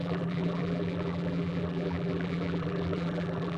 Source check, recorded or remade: remade